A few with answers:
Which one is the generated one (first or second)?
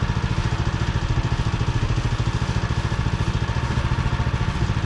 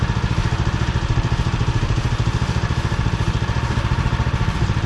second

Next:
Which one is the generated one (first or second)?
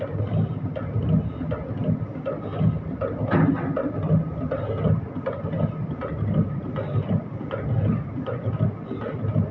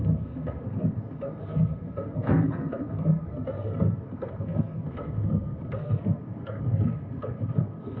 second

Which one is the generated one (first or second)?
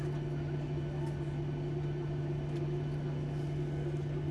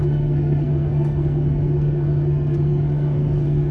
second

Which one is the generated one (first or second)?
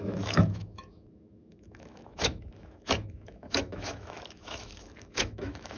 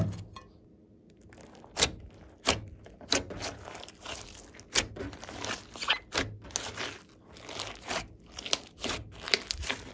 first